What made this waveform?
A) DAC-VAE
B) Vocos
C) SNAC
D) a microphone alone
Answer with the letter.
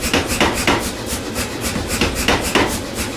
D